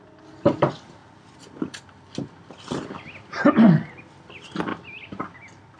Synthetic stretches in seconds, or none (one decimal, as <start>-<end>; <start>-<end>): 0.0-1.0; 3.5-4.7